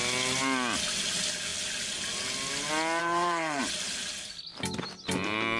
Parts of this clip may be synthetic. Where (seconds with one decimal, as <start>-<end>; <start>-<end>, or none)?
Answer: 3.0-3.6